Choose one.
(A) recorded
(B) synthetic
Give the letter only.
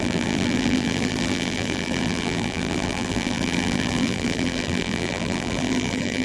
B